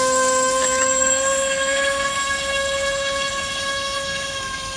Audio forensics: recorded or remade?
remade